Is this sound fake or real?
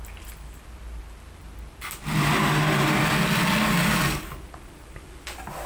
real